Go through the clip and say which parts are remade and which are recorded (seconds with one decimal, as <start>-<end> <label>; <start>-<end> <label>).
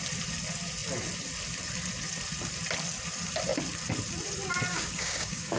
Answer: 0.0-4.7 recorded; 4.7-5.6 remade